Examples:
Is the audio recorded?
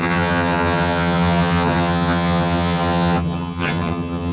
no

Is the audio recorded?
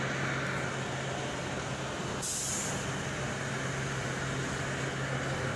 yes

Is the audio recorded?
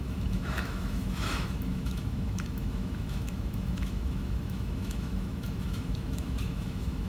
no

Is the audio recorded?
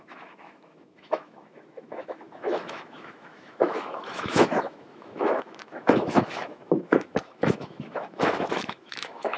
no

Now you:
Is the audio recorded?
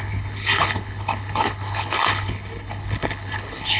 no